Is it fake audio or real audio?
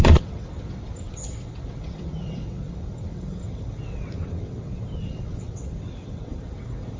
fake